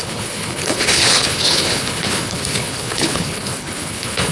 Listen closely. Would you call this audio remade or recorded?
remade